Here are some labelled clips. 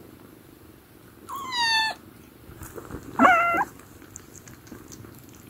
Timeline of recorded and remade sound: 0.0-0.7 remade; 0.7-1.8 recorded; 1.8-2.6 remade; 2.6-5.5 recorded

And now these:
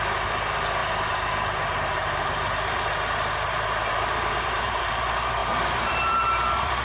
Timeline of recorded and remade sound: 0.0-0.8 recorded; 0.8-4.9 remade; 4.9-5.4 recorded; 5.4-6.8 remade

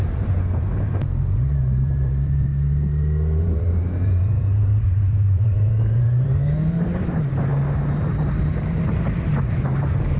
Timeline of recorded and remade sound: 0.0-2.5 remade; 2.5-3.4 recorded; 3.4-7.5 remade; 7.5-8.1 recorded; 8.1-10.2 remade

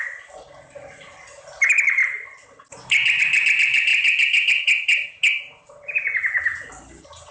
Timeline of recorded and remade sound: 0.0-7.3 recorded

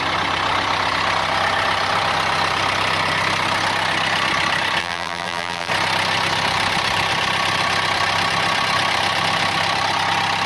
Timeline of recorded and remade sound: 0.0-4.8 recorded; 4.8-5.7 remade; 5.7-10.5 recorded

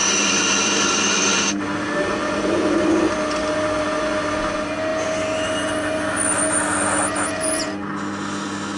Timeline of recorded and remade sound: 0.0-1.0 remade; 1.0-2.2 recorded; 2.2-3.0 remade; 3.0-8.8 recorded